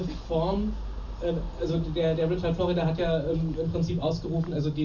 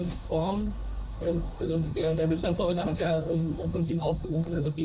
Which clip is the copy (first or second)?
second